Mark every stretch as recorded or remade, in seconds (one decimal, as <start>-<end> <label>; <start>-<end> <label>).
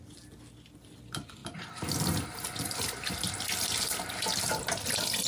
0.0-5.3 recorded